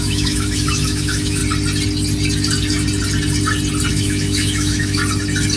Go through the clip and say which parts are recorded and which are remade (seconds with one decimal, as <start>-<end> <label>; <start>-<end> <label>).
0.0-1.4 remade; 1.4-3.9 recorded; 3.9-5.0 remade; 5.0-5.6 recorded